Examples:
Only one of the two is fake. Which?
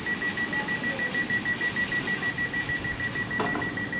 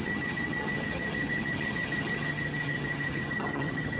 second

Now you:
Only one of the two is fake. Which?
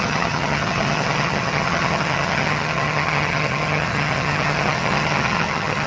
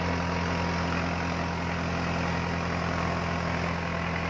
first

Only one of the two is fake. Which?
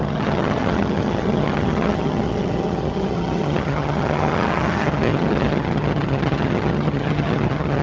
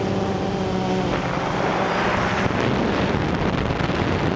first